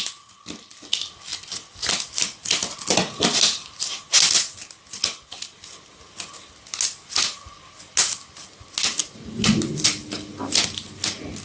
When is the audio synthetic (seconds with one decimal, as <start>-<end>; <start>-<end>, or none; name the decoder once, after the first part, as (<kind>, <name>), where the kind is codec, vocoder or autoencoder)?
none